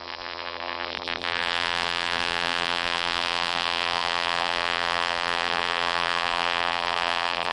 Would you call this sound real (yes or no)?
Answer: no